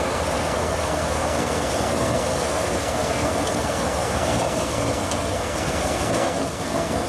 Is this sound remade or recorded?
remade